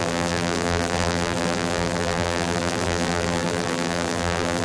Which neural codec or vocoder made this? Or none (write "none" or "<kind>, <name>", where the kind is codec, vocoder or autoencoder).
vocoder, BigVGAN v2